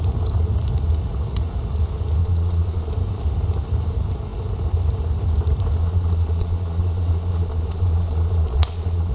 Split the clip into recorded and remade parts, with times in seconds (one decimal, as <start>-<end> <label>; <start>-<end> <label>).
0.0-2.2 recorded; 2.2-2.9 remade; 2.9-5.8 recorded; 5.8-9.1 remade